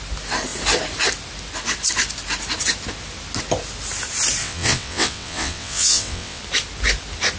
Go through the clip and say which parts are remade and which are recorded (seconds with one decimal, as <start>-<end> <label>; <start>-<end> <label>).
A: 0.0-4.4 recorded; 4.4-6.4 remade; 6.4-7.4 recorded